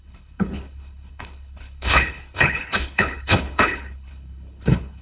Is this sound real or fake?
fake